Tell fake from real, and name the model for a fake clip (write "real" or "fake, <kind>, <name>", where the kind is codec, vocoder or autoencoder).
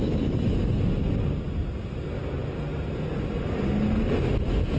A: real